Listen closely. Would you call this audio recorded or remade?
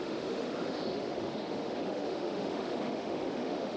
remade